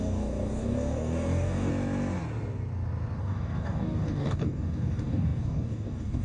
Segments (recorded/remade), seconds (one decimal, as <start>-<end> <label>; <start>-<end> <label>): 0.0-1.7 remade; 1.7-3.2 recorded; 3.2-6.2 remade